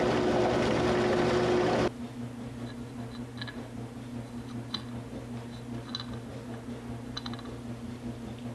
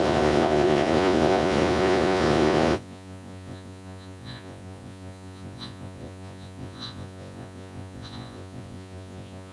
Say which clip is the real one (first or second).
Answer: first